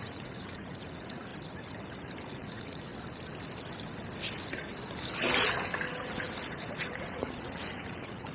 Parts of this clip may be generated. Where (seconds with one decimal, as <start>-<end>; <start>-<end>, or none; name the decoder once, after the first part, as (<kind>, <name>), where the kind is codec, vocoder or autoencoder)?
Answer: 0.0-1.3 (vocoder, Vocos); 2.2-2.9; 6.9-8.3